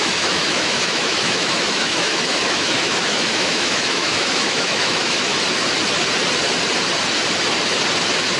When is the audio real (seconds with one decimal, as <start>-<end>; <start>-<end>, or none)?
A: 5.3-8.4